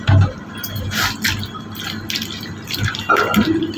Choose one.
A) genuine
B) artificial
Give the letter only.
A